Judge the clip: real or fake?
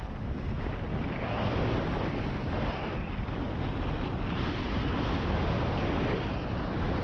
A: real